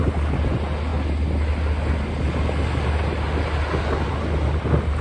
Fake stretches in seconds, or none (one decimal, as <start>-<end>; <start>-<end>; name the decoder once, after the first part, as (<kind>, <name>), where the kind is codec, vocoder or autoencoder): none